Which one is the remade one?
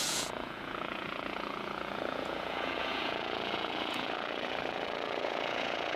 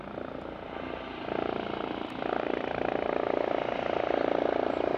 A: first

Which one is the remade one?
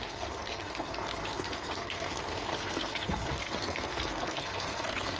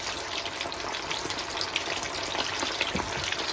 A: first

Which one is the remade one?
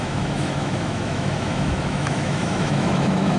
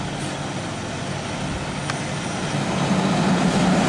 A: first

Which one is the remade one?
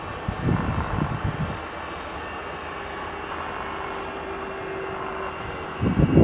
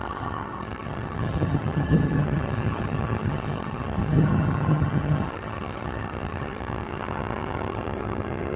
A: second